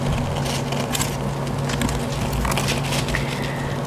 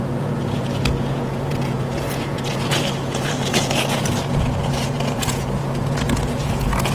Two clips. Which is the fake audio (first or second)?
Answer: second